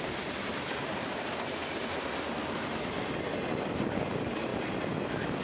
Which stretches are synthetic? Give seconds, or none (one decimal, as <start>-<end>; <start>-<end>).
none